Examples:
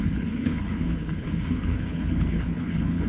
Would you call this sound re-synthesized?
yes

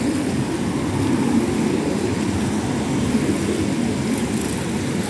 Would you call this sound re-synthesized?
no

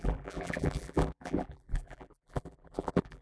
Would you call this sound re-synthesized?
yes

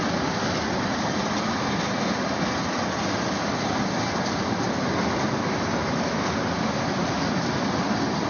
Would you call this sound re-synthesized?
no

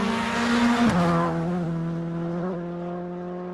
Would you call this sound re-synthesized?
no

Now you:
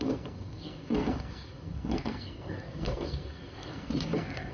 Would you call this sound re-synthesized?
yes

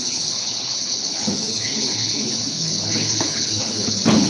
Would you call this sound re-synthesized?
yes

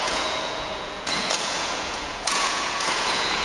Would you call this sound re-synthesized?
yes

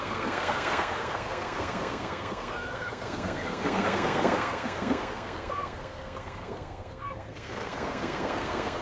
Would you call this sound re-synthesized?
yes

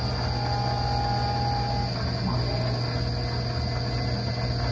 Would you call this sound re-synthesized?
no